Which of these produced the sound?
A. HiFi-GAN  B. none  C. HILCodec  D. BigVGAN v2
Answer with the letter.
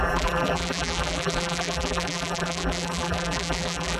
D